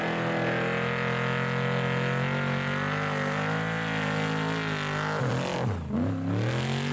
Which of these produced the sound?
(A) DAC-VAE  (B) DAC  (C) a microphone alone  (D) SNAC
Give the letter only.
C